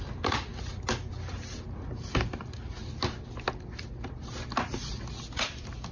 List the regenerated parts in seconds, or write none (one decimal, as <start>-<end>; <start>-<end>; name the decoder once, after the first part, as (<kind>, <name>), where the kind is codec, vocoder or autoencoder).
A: none